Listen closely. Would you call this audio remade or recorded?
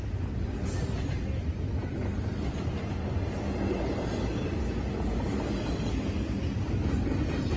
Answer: recorded